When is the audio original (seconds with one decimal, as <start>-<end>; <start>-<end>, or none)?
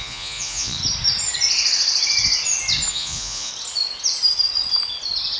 0.8-2.9; 3.5-5.4